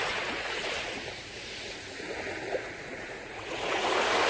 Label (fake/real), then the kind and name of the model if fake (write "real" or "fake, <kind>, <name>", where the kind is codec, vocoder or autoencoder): fake, vocoder, Vocos